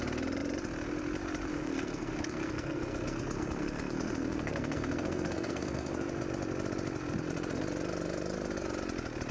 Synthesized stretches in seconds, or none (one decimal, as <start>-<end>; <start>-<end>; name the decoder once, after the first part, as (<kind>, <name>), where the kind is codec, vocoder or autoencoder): 1.5-6.1 (codec, SNAC)